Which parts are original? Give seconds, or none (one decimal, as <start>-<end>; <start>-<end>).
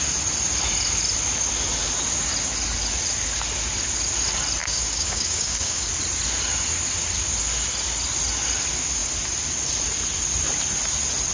0.0-4.6; 5.9-11.3